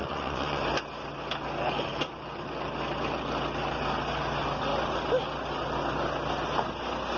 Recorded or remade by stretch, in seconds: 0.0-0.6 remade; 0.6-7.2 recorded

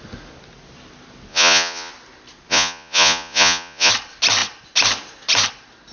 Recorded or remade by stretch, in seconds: 0.0-1.3 recorded; 1.3-1.9 remade; 1.9-2.5 recorded; 2.5-3.9 remade; 3.9-5.9 recorded

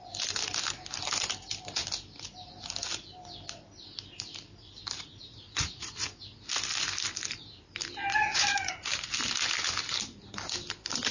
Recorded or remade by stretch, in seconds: 0.0-5.3 recorded; 5.3-5.9 remade; 5.9-8.3 recorded; 8.3-9.0 remade; 9.0-11.1 recorded

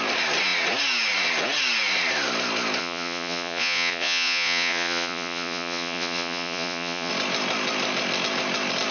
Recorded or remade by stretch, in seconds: 0.0-2.8 recorded; 2.8-7.1 remade; 7.1-8.9 recorded

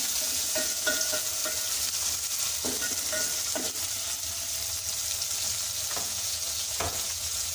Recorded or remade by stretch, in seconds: 0.0-1.4 remade; 1.4-5.9 recorded; 5.9-7.5 remade

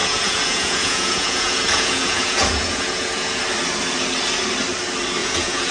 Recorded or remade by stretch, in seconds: 0.0-3.4 remade; 3.4-5.2 recorded; 5.2-5.7 remade

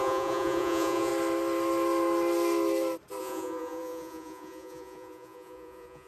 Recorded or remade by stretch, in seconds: 0.0-1.1 remade; 1.1-3.2 recorded; 3.2-6.1 remade

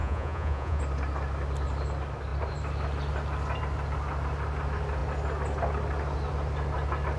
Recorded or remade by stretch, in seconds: 0.0-0.8 remade; 0.8-7.2 recorded